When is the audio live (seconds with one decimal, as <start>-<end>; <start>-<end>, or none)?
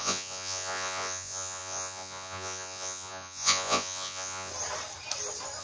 4.5-5.6